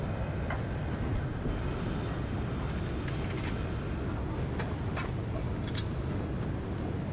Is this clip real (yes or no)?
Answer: yes